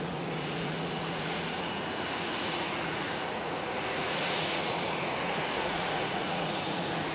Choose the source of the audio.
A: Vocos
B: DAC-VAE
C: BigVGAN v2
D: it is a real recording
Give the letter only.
A